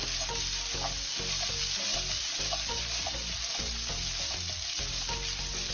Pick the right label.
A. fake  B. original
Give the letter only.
B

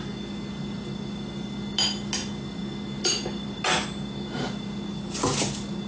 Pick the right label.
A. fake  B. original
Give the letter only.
B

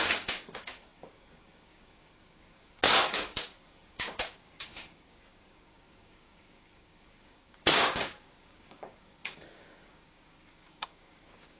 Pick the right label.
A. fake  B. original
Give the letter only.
A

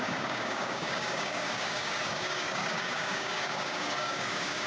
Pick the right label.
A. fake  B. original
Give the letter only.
A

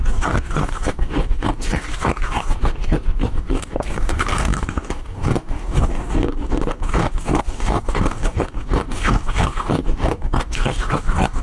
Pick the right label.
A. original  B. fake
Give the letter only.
B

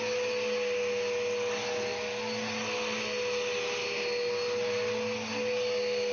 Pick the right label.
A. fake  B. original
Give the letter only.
B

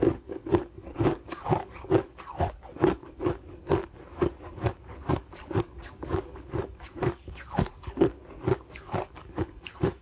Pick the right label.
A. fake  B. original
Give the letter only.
A